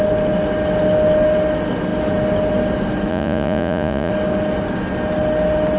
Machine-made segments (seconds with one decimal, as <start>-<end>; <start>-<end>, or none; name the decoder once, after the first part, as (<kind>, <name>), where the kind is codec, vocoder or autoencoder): 3.1-4.1 (vocoder, Vocos)